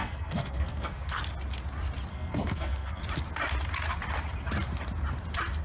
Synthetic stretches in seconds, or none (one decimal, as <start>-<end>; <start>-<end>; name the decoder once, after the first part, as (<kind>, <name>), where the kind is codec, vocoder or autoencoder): 0.0-1.2 (codec, SNAC); 2.1-3.0